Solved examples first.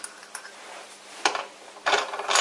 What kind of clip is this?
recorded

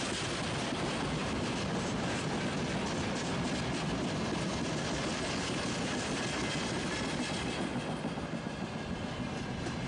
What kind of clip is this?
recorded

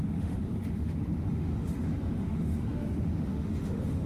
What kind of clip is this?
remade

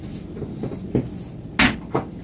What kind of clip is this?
recorded